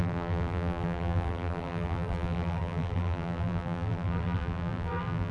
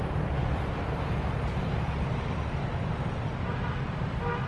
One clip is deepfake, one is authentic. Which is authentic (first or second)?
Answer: second